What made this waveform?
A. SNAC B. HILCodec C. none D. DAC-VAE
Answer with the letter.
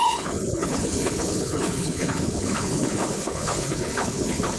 B